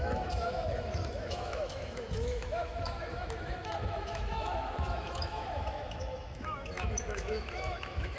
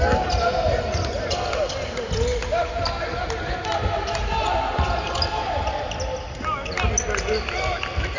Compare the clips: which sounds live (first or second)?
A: second